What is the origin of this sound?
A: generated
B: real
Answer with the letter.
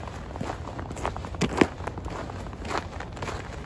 B